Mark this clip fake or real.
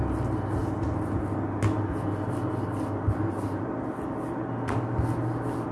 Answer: real